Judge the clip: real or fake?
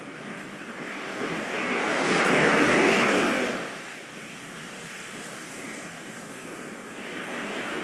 fake